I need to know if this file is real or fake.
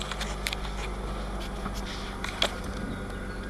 real